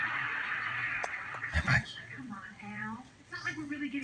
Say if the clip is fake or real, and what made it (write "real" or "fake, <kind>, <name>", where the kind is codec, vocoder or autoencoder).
fake, vocoder, WaveNeXt